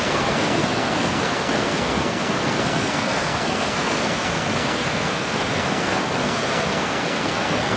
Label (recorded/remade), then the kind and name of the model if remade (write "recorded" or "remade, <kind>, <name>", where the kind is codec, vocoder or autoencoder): remade, codec, SNAC